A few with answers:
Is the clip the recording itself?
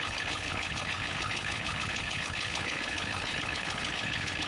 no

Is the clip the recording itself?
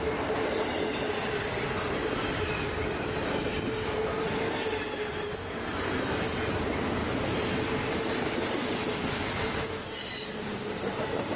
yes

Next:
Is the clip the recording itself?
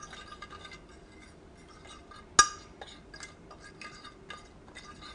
yes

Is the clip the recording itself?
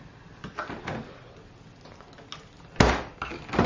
yes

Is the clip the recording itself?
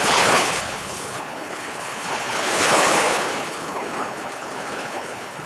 no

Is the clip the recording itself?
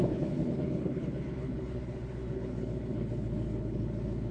no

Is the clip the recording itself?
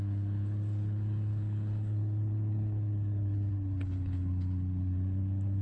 no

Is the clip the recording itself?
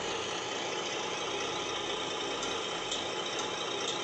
yes